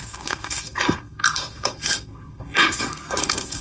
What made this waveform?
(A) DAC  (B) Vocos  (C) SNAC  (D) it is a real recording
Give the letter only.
C